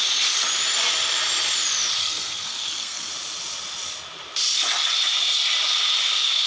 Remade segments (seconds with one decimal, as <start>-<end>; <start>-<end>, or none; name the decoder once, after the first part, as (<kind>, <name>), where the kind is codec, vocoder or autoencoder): 2.0-3.1 (codec, SNAC)